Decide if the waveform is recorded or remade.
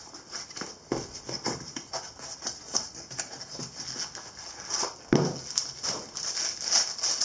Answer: recorded